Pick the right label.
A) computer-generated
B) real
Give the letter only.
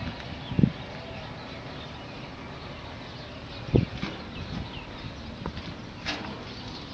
B